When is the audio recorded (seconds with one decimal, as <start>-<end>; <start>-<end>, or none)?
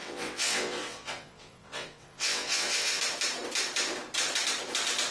3.0-5.1